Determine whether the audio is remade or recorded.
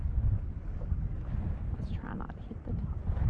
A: recorded